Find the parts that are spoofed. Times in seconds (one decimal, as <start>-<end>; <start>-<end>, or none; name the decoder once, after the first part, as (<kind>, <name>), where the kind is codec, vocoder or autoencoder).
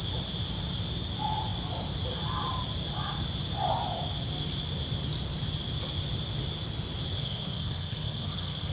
7.2-8.7 (codec, SNAC)